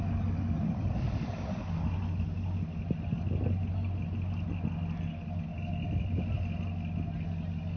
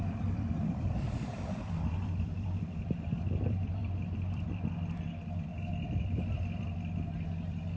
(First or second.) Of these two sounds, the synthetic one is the second